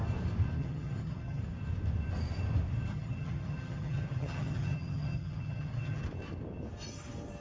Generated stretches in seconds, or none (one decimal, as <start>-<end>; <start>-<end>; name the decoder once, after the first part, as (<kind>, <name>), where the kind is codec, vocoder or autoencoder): 0.6-1.4 (vocoder, HiFi-GAN); 2.9-6.0